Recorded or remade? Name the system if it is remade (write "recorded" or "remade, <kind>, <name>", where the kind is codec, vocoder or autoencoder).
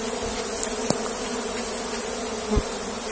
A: recorded